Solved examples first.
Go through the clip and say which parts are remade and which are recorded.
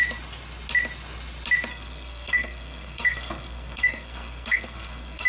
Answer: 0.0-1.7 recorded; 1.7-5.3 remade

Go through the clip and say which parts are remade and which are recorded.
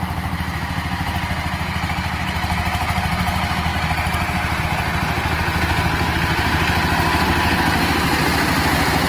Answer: 0.0-9.1 recorded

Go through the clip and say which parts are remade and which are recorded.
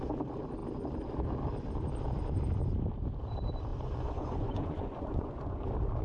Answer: 0.0-3.7 recorded; 3.7-5.6 remade; 5.6-6.0 recorded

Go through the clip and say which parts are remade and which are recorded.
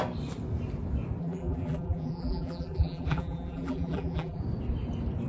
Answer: 0.0-1.2 recorded; 1.2-4.4 remade; 4.4-5.3 recorded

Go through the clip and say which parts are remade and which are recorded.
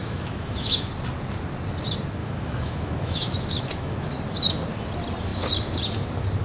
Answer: 0.0-0.9 remade; 0.9-2.2 recorded; 2.2-4.1 remade; 4.1-6.4 recorded